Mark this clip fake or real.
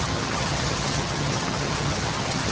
fake